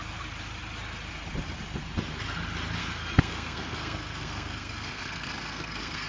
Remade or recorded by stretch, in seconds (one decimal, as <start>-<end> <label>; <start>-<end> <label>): 0.0-2.8 recorded; 2.8-6.1 remade